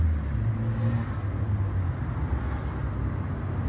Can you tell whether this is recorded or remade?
recorded